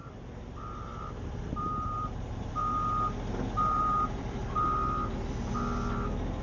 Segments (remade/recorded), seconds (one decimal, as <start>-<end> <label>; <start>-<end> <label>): 0.0-0.9 remade; 0.9-1.5 recorded; 1.5-2.6 remade; 2.6-3.8 recorded; 3.8-4.4 remade; 4.4-6.4 recorded